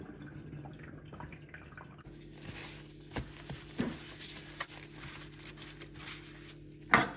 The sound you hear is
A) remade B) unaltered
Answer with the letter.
B